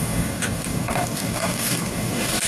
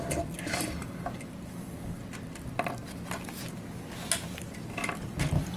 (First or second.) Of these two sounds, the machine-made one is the first